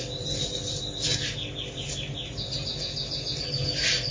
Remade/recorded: recorded